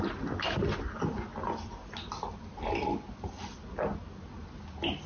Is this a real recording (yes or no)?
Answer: yes